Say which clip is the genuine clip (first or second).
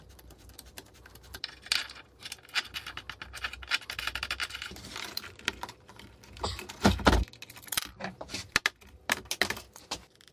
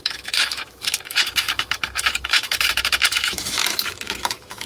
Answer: first